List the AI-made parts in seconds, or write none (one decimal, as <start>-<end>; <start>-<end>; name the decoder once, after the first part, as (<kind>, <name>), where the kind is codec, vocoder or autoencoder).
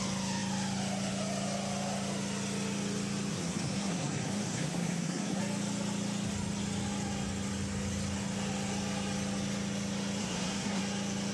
3.3-5.4 (codec, SNAC); 10.2-10.8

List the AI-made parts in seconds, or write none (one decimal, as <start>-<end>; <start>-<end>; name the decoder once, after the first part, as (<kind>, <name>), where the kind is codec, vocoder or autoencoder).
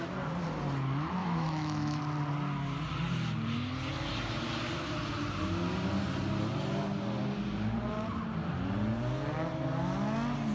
1.2-2.0 (autoencoder, DAC-VAE)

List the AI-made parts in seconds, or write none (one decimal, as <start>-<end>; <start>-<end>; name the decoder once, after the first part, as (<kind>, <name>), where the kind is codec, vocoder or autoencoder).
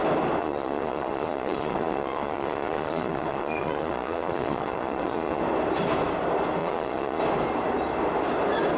0.4-5.4 (vocoder, Vocos); 6.6-7.2